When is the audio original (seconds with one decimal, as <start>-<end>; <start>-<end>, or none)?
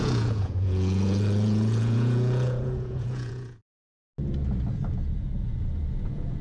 3.6-4.9